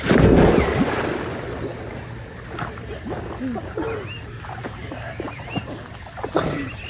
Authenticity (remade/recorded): recorded